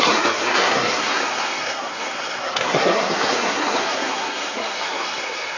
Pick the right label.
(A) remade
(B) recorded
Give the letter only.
A